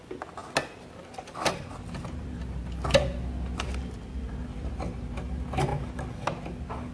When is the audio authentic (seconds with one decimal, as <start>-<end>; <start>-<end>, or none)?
0.0-6.9